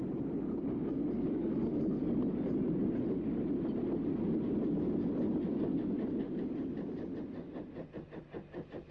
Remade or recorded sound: recorded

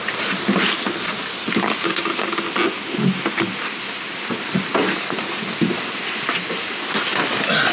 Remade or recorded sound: recorded